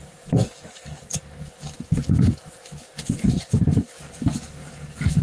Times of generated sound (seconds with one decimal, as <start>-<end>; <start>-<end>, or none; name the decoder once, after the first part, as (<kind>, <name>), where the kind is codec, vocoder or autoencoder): 0.0-5.2 (codec, DAC)